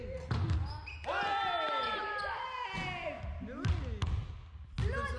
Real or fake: real